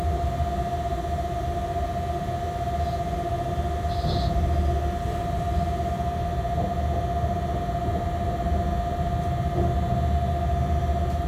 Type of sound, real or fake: real